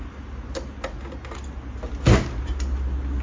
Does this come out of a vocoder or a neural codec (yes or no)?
no